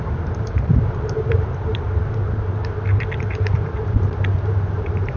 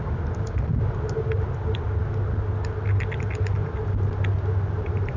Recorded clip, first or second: second